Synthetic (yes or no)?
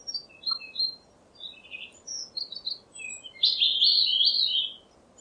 no